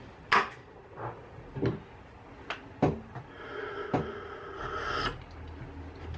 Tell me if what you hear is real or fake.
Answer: real